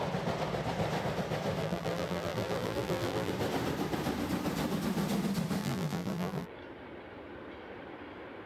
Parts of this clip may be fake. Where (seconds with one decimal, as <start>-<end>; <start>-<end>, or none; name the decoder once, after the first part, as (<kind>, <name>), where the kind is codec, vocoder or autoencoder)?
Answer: 1.6-3.3 (vocoder, BigVGAN v2); 5.6-6.5